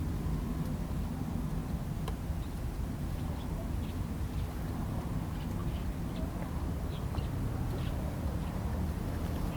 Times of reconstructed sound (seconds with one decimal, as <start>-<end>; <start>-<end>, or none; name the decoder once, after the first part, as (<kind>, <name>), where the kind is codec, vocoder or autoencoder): none